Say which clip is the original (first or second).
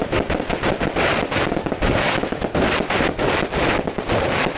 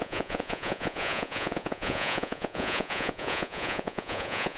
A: first